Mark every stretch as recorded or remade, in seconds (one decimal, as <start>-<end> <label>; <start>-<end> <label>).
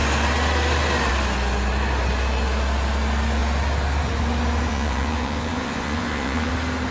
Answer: 0.0-4.7 recorded; 4.7-6.5 remade; 6.5-6.9 recorded